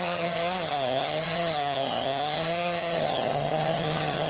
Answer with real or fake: fake